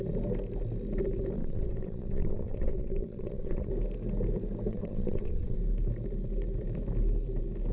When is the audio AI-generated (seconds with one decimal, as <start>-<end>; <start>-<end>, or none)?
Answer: 1.4-3.7; 4.7-5.6